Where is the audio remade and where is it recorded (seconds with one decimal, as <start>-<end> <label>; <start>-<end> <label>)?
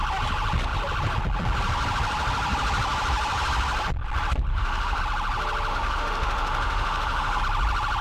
0.0-4.5 recorded; 4.5-5.0 remade; 5.0-5.7 recorded; 5.7-7.4 remade; 7.4-8.0 recorded